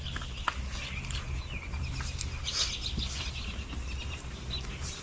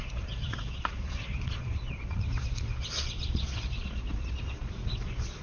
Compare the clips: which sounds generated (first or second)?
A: second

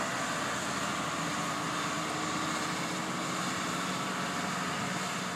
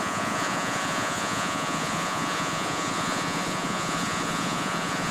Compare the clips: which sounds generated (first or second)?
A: second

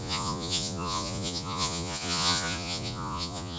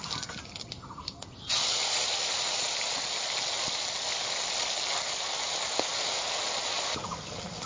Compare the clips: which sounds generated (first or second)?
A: first